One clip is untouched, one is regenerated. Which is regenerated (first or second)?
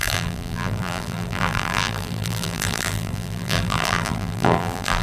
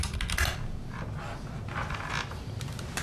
first